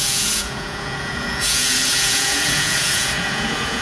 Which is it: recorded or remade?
remade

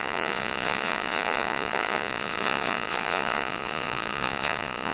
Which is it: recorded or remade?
remade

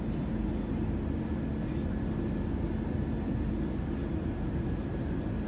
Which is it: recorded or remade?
recorded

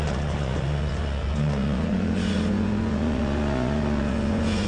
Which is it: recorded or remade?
remade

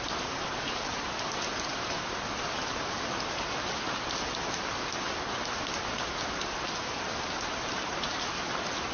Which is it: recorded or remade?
recorded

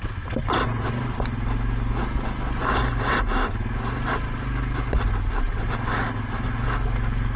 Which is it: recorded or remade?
recorded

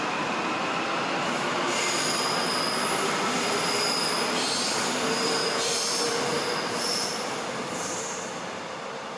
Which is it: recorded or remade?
recorded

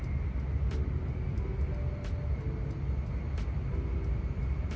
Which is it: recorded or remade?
recorded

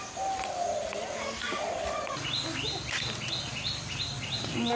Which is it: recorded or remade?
recorded